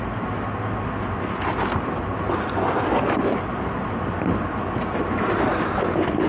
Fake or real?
real